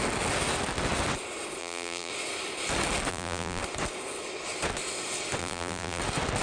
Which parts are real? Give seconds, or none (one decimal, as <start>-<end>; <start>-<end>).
0.0-1.6; 2.1-3.1; 3.6-5.4; 6.0-6.4